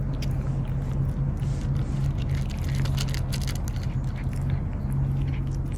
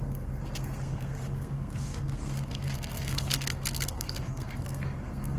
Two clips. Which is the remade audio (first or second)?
second